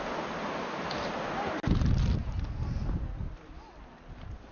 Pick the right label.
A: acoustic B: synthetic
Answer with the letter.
A